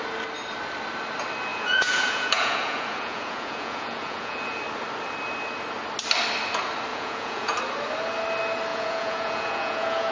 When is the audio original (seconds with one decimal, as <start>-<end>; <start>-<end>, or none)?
0.0-1.5; 4.6-6.9; 7.6-8.7